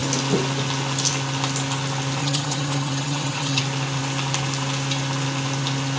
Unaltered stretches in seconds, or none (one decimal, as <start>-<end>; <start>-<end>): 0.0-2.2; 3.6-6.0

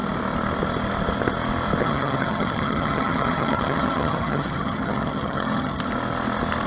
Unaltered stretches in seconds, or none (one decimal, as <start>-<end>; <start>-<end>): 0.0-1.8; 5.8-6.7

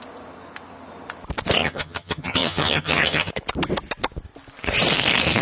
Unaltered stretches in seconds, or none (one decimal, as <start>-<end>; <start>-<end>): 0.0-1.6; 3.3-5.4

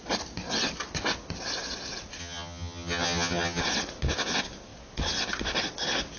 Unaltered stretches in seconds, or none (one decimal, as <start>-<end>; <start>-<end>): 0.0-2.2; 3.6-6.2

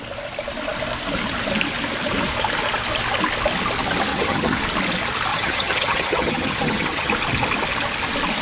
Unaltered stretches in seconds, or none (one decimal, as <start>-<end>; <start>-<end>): 0.0-4.1; 4.6-5.3; 7.1-8.4